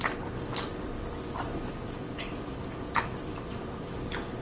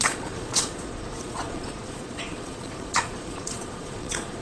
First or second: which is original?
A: first